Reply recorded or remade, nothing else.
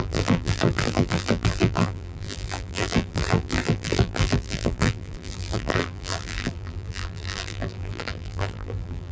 remade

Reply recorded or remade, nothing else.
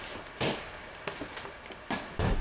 recorded